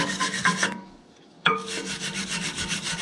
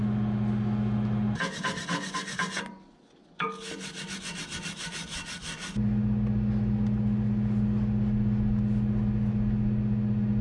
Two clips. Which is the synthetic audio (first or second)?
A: first